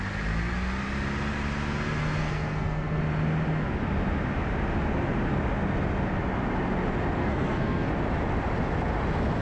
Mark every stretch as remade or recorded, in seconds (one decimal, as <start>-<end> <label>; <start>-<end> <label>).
0.0-2.2 recorded; 2.2-3.0 remade; 3.0-7.2 recorded; 7.2-7.9 remade; 7.9-9.4 recorded